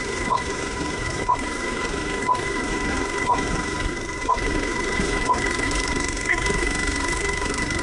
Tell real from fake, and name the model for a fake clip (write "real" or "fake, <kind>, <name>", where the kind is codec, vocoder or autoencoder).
fake, codec, SNAC